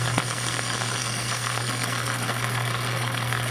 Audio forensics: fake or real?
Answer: fake